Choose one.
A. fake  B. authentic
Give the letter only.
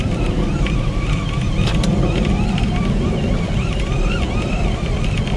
B